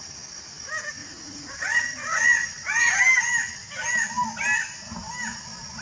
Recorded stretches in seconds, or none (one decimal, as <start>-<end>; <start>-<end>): 0.0-1.0; 3.0-5.8

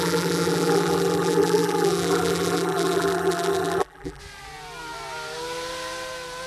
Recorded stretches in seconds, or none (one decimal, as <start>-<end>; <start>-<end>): 4.2-6.5

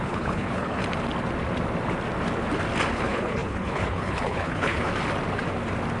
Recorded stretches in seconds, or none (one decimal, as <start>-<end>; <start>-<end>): 0.8-2.9; 4.9-6.0

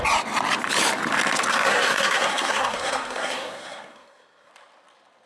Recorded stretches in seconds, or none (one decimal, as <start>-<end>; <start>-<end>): 0.0-1.5; 4.5-5.3

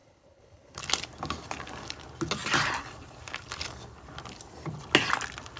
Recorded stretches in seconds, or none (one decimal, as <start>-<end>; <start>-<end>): 0.8-5.6